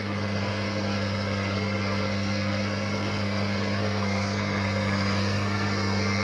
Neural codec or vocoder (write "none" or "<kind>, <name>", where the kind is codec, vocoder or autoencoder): codec, SNAC